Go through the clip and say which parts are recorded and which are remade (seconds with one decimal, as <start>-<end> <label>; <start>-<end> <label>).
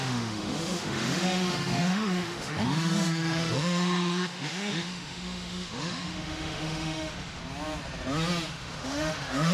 0.0-7.4 remade; 7.4-8.5 recorded; 8.5-9.5 remade